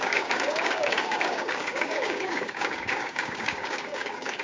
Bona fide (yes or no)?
no